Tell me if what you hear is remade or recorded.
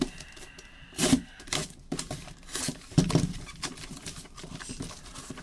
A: recorded